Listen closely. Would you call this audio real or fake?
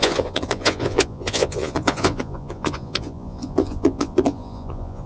fake